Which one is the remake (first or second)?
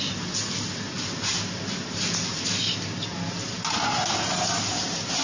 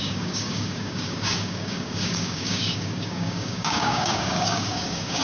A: second